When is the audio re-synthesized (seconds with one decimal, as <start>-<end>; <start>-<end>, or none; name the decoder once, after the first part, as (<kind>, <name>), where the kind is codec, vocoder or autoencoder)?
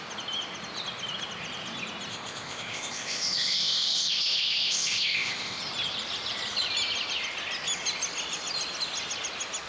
2.1-5.6 (codec, ZipCodec)